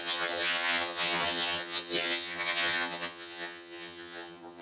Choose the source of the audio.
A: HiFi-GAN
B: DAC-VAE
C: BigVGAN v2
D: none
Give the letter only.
A